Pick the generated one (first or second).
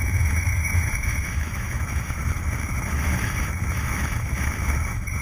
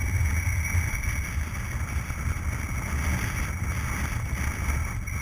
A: first